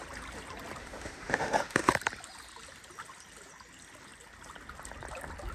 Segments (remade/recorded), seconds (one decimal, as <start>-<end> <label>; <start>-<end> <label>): 0.0-0.8 recorded; 0.8-1.9 remade; 1.9-5.5 recorded